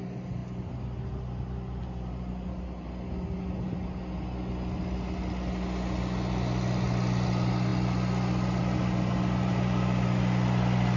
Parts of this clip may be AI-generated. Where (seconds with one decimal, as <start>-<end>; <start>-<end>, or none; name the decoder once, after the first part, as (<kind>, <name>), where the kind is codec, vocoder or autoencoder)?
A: none